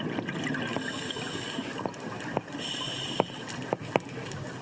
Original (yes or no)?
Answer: yes